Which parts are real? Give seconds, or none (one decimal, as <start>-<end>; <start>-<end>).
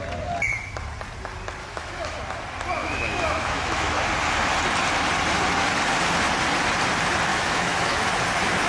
0.0-1.6; 2.2-2.8; 4.0-7.3; 8.1-8.7